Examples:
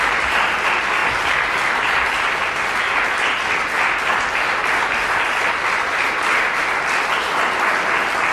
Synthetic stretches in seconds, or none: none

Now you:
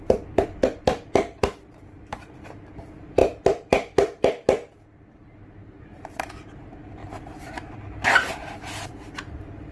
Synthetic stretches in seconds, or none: 0.0-7.0 (vocoder, BigVGAN v2); 8.9-9.7

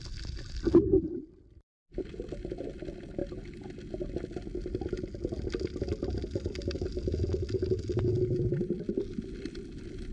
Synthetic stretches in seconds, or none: none